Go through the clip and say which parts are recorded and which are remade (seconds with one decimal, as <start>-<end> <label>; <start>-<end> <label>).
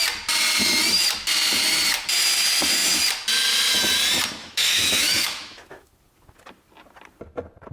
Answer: 0.0-4.4 recorded; 4.4-5.9 remade; 5.9-7.7 recorded